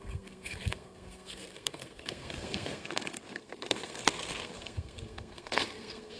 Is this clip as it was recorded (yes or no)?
no